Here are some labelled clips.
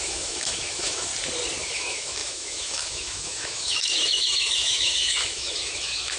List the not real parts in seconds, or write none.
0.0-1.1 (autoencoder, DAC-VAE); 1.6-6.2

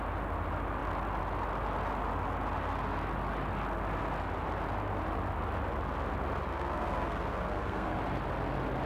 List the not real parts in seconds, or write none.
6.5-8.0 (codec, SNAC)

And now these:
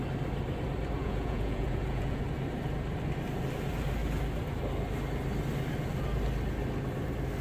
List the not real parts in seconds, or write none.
1.0-2.2 (vocoder, Vocos)

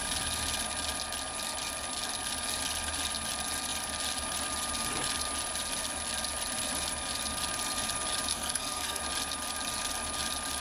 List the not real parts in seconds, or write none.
8.3-9.0 (codec, SNAC)

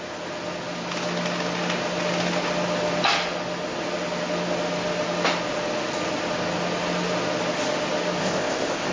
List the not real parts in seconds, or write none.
8.2-8.9 (codec, ZipCodec)

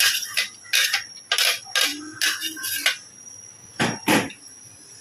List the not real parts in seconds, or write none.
none